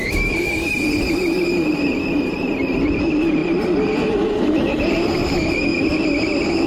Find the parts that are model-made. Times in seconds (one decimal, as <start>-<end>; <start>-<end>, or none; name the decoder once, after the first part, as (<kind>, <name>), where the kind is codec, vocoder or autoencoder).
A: 2.1-3.4 (vocoder, BigVGAN v2); 4.4-5.7